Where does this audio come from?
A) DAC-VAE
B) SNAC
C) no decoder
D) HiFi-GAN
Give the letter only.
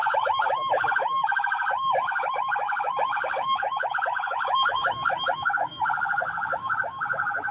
A